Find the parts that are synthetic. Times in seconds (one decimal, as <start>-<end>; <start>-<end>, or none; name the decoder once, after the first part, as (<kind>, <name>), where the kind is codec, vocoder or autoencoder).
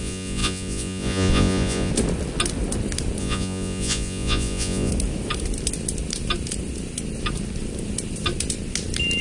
0.0-1.9 (vocoder, Vocos); 3.2-4.9